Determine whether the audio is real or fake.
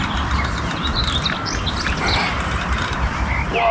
real